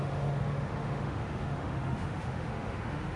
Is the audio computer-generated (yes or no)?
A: yes